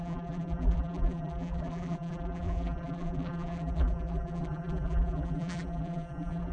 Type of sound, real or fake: fake